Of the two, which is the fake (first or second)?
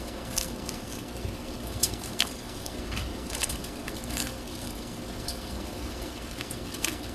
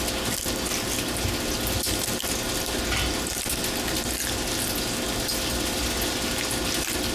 first